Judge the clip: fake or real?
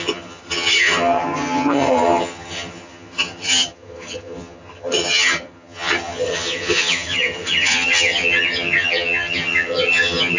fake